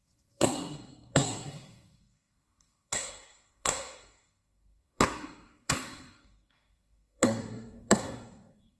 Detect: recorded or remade remade